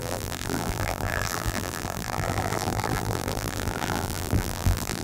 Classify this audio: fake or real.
fake